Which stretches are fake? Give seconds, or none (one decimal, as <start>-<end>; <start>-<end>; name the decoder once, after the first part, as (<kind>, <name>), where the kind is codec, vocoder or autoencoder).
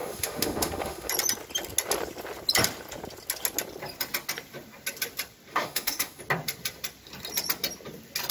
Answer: 0.0-1.1 (autoencoder, DAC-VAE); 5.5-6.2